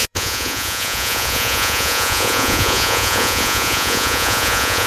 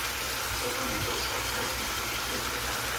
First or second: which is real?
second